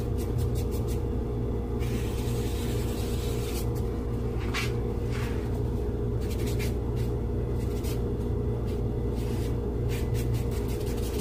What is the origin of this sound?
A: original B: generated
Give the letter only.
A